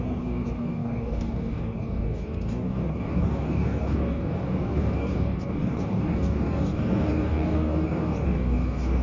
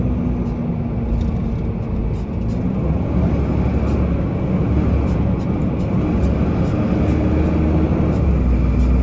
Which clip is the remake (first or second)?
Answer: first